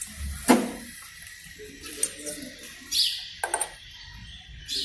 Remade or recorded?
recorded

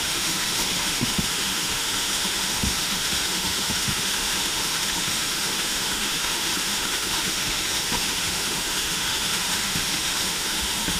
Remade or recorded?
remade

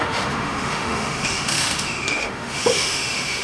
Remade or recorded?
remade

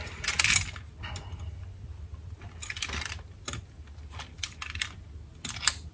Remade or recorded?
recorded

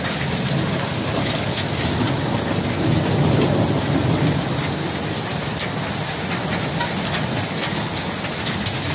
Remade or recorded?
recorded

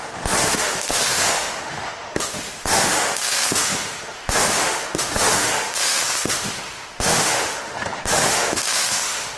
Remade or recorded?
remade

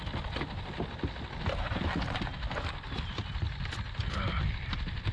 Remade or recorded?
recorded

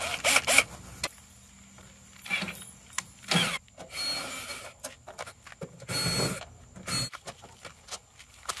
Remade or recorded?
recorded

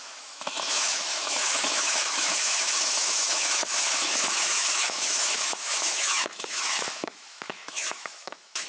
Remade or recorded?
remade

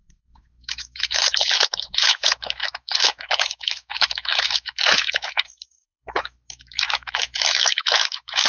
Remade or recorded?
remade